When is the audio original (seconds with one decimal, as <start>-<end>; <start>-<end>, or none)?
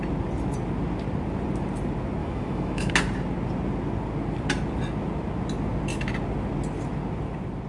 0.0-2.2; 2.9-7.7